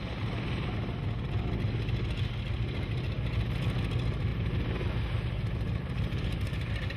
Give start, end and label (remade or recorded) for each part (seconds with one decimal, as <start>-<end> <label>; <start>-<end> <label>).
0.0-4.3 recorded; 4.3-7.0 remade